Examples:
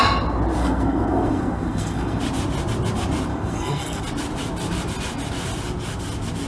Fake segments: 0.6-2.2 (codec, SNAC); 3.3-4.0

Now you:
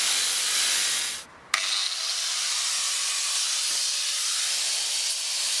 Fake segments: none

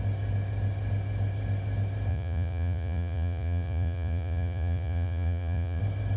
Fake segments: 2.1-5.8 (vocoder, Vocos)

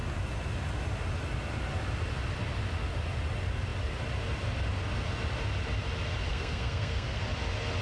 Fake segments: 6.3-7.2 (codec, SNAC)

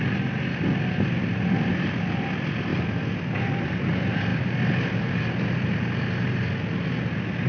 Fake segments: none

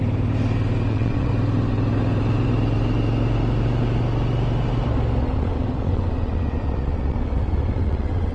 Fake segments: 0.9-1.3 (vocoder, WaveNeXt); 5.2-8.3

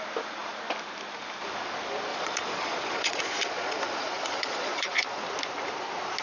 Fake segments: 2.1-5.2 (vocoder, Vocos)